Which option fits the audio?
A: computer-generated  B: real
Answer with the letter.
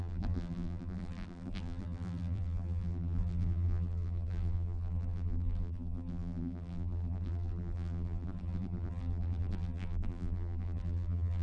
A